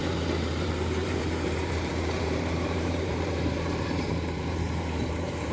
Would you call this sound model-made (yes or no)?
yes